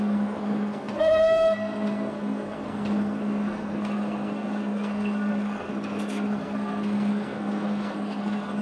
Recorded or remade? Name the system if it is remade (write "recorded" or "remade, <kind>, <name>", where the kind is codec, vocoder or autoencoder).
remade, codec, SNAC